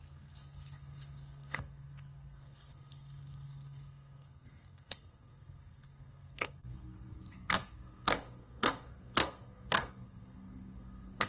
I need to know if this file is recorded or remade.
remade